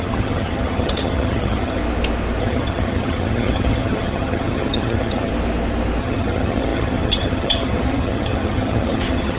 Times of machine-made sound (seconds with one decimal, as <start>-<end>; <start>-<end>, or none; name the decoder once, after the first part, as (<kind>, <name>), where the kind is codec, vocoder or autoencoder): 0.0-1.8 (vocoder, HiFi-GAN); 2.4-5.3; 6.0-9.4